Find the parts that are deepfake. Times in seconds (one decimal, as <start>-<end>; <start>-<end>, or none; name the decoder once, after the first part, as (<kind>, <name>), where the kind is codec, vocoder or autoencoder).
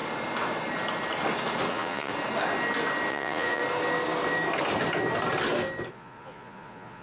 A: 1.7-2.1 (vocoder, Vocos); 3.1-3.6; 5.9-7.0